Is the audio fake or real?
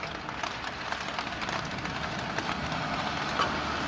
real